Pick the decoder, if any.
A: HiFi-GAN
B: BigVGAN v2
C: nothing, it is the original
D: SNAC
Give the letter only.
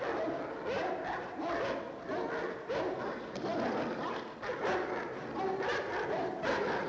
C